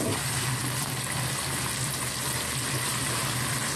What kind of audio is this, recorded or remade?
recorded